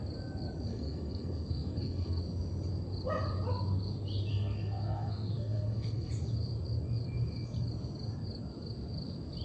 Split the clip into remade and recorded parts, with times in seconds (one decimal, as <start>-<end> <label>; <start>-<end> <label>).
0.0-0.7 recorded; 0.7-2.2 remade; 2.2-4.3 recorded; 4.3-6.1 remade; 6.1-9.4 recorded